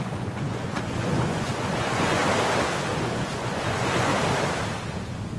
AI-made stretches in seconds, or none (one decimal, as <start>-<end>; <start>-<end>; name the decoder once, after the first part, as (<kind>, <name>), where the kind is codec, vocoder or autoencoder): 0.0-2.2 (vocoder, Vocos); 2.9-4.1